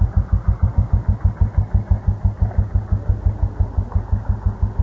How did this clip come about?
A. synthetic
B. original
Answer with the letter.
B